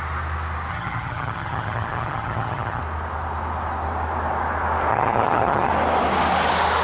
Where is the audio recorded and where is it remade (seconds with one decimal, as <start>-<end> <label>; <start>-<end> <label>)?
0.0-0.7 recorded; 0.7-2.8 remade; 2.8-4.9 recorded; 4.9-5.7 remade; 5.7-6.8 recorded